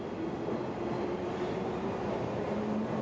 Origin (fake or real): real